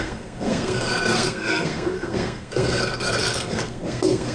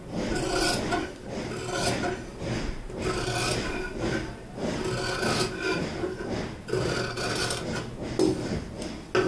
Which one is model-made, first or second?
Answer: first